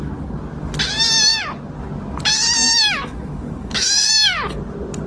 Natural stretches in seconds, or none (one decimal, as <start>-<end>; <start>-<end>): 0.0-2.7; 4.1-5.1